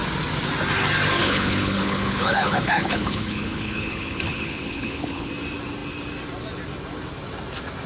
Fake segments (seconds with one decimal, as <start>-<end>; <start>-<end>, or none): 1.2-5.3